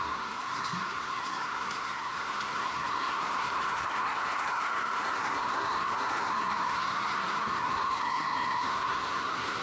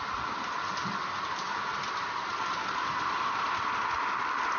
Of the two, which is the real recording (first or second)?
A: second